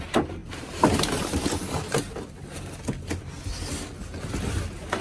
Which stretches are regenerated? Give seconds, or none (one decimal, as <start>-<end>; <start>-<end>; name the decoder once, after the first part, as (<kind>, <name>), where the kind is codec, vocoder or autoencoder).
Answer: none